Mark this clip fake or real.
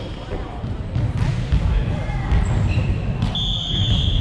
real